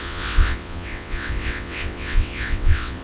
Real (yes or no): no